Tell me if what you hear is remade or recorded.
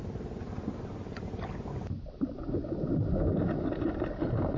recorded